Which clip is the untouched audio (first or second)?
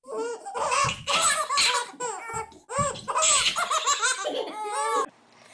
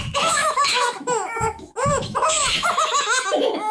first